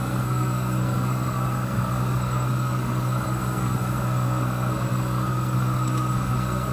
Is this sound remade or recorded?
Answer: remade